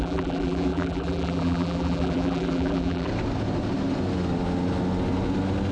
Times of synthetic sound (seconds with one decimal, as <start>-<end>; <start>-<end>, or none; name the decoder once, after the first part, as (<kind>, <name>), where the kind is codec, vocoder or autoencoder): 0.0-3.1 (vocoder, BigVGAN v2)